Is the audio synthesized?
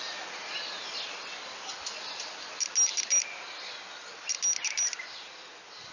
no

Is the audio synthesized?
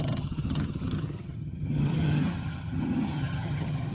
yes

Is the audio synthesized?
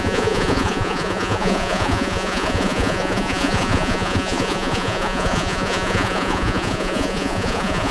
yes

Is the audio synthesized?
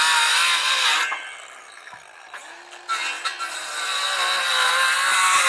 no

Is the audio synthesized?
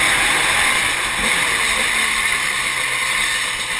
no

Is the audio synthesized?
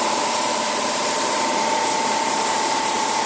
yes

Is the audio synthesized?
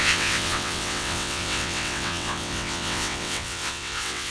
yes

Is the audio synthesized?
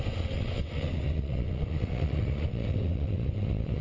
yes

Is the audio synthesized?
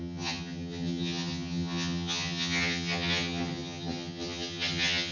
yes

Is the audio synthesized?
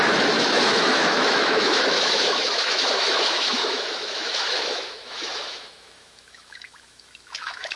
yes